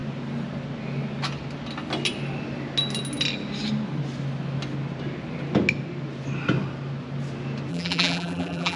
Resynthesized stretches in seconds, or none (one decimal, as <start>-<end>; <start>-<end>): 7.7-8.8